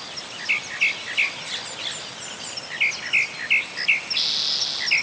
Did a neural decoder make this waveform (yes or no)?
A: no